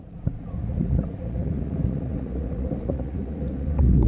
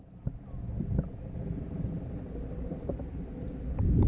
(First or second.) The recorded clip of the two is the second